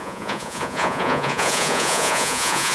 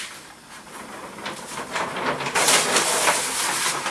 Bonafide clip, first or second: second